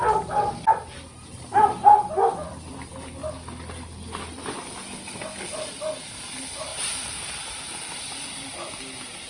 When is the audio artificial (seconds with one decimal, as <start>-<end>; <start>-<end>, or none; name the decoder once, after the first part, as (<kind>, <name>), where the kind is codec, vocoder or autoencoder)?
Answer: 6.7-7.9 (vocoder, BigVGAN v2)